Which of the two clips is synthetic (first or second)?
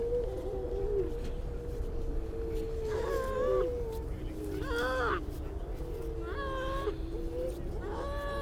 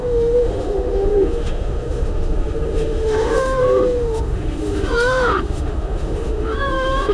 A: second